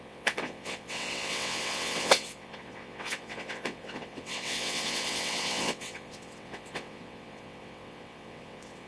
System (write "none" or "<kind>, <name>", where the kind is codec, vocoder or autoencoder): vocoder, WaveNeXt